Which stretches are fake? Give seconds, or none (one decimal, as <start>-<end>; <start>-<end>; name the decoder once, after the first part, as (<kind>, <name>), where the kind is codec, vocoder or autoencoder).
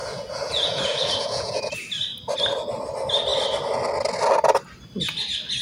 0.0-1.7 (vocoder, Vocos)